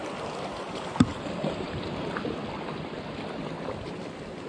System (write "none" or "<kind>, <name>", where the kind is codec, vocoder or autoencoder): none